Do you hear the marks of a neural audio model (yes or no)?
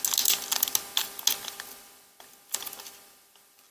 no